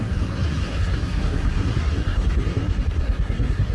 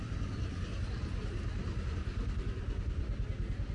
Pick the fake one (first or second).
first